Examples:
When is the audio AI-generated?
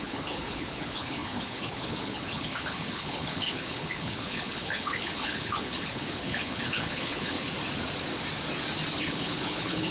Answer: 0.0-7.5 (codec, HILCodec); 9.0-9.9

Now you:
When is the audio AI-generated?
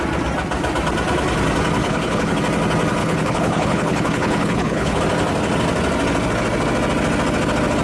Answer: 1.8-2.4 (codec, HILCodec); 3.0-5.0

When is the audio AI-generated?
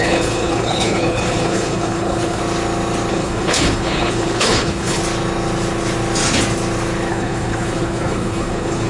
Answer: 0.0-2.4 (codec, HILCodec); 3.1-5.0; 7.1-8.9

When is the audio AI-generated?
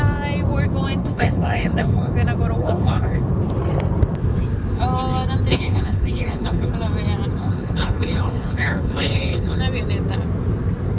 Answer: 1.0-2.1 (codec, HILCodec); 2.6-3.2; 5.5-6.7; 7.4-9.6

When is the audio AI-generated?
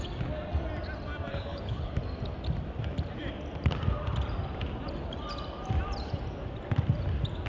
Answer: 1.3-1.9 (codec, HILCodec)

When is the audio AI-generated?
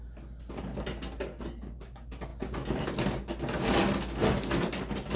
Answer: none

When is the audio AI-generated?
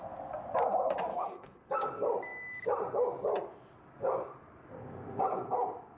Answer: 1.1-1.7 (codec, HILCodec)